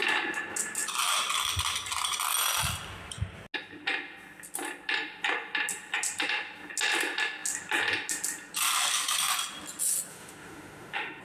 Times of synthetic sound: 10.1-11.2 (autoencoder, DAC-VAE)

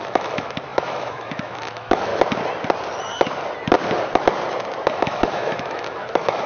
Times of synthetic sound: 0.0-2.1 (autoencoder, DAC-VAE); 4.9-6.5

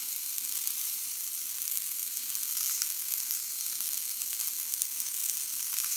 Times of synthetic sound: 0.0-0.7 (codec, SNAC); 1.5-6.0

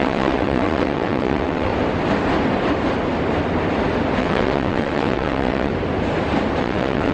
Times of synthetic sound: 0.0-1.7 (vocoder, WaveNeXt); 4.2-5.7; 6.6-7.1

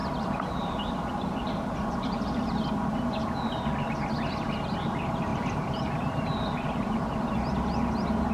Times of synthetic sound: 0.0-2.7 (vocoder, BigVGAN v2); 5.3-7.5

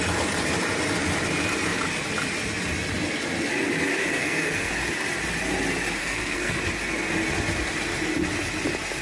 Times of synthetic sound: 4.0-4.7 (codec, SNAC); 6.0-6.6